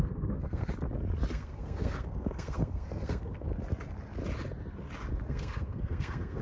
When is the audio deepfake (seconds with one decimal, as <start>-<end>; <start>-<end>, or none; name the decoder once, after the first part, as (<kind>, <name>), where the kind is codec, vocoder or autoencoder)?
0.0-0.7 (codec, SNAC); 1.3-3.5; 5.3-6.4